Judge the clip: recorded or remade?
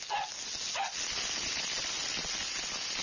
recorded